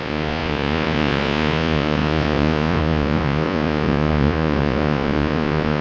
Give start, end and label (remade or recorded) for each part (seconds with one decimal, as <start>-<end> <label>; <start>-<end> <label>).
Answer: 0.0-5.8 remade